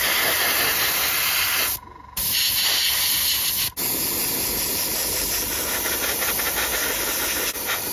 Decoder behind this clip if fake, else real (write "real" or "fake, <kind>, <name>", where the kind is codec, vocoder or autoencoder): real